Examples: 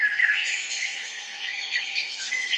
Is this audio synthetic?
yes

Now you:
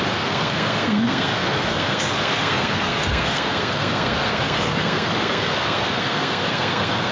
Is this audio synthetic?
yes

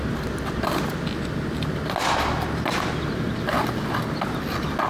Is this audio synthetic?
no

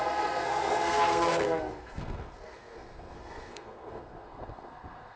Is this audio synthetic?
yes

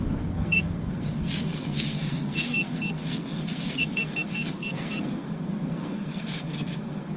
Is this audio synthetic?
yes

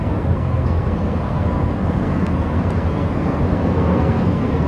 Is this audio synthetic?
yes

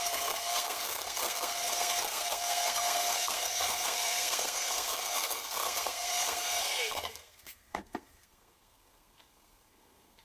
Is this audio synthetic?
yes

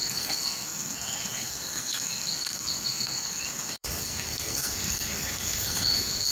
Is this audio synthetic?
yes